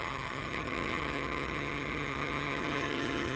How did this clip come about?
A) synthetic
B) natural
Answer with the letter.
A